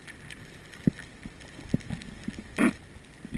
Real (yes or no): yes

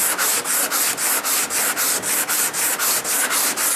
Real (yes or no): yes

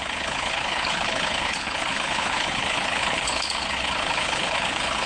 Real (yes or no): no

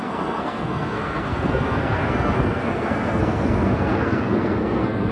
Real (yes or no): no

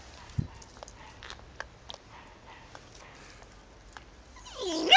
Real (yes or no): yes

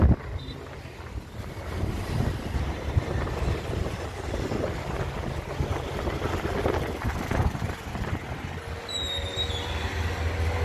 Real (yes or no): yes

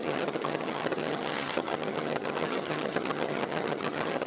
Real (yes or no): no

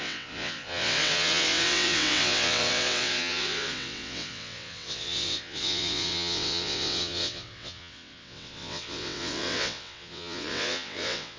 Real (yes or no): no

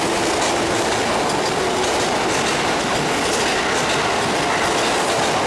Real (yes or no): yes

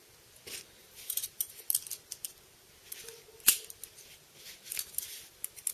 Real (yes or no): yes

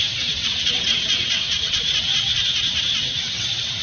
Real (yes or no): no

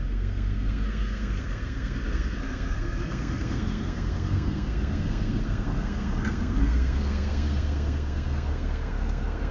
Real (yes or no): no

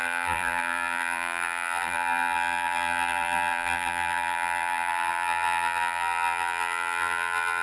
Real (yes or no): no